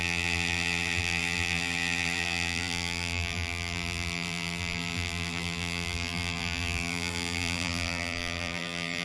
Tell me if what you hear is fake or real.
fake